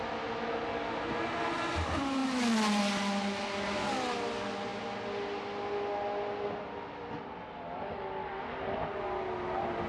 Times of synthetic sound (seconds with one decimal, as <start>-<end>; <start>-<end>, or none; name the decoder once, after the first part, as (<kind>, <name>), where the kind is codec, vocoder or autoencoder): none

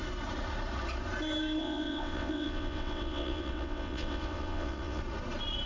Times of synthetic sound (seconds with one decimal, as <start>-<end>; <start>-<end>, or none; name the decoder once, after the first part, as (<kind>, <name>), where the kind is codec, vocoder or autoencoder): 1.6-5.0 (vocoder, WaveNeXt)

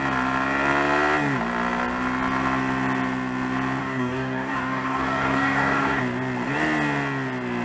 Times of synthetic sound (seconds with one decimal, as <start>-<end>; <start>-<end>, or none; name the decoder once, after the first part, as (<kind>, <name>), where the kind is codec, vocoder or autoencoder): 3.8-6.0 (codec, DAC)

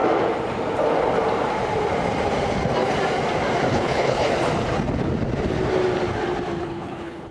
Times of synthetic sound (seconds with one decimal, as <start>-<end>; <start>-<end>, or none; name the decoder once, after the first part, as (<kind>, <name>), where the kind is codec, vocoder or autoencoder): 3.7-4.3 (codec, HILCodec); 6.6-7.3

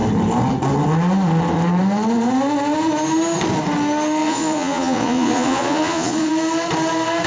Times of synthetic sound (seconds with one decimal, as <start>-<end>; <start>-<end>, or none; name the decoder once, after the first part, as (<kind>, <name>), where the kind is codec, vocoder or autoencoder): 4.2-6.3 (vocoder, Vocos)

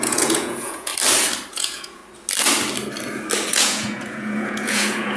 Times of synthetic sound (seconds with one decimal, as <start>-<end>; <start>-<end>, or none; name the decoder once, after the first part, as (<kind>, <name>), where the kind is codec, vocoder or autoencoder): 0.0-0.9 (vocoder, Vocos); 1.5-2.0; 3.5-5.2